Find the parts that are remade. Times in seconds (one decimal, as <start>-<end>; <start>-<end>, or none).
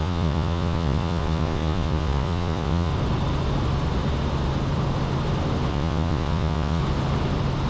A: 0.0-2.9; 5.7-6.8